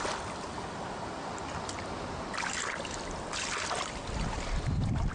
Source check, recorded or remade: recorded